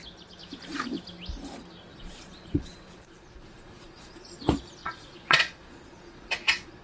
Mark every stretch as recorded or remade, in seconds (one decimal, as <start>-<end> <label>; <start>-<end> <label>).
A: 0.0-1.9 recorded; 1.9-4.3 remade; 4.3-4.8 recorded; 4.8-6.8 remade